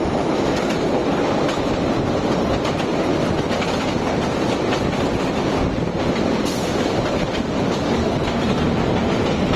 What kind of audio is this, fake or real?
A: fake